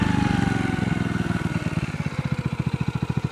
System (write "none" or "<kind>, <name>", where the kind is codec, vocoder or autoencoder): none